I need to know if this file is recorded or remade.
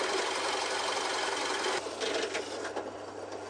recorded